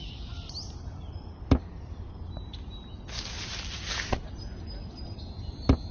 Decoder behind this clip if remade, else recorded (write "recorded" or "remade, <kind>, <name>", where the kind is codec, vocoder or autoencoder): recorded